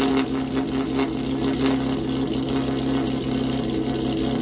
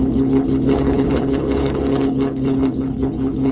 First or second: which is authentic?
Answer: first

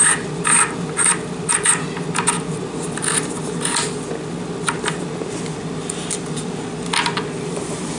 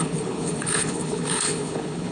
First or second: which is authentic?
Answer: first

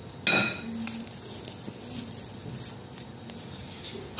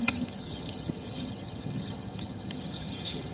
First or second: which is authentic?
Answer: first